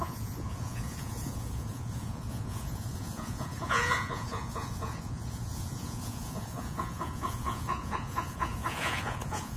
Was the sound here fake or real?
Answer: fake